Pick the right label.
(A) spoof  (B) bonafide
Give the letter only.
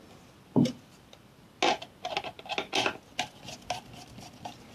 B